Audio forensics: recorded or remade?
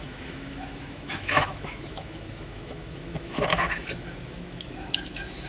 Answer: remade